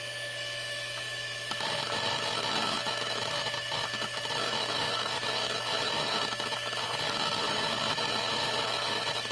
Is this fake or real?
fake